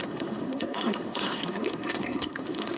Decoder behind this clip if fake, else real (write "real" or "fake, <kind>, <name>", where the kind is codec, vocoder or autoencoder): fake, codec, SNAC